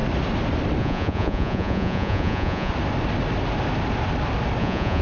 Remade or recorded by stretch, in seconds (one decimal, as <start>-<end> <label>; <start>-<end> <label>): 0.0-0.8 recorded; 0.8-2.7 remade; 2.7-4.6 recorded; 4.6-5.0 remade